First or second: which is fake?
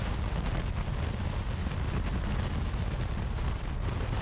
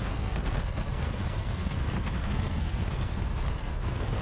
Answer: second